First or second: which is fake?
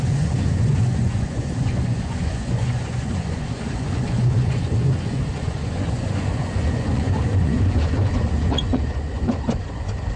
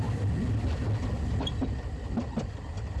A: first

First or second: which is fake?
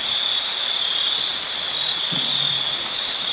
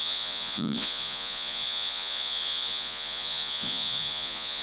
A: second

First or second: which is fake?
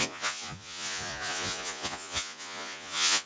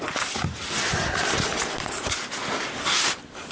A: first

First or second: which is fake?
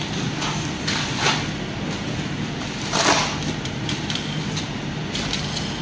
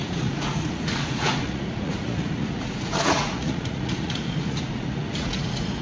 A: second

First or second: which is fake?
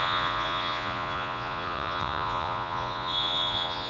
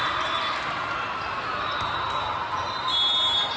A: first